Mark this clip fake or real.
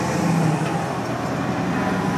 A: real